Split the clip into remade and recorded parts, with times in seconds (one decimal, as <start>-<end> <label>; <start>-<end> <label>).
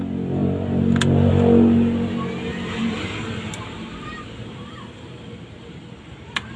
0.0-2.5 recorded; 2.5-6.6 remade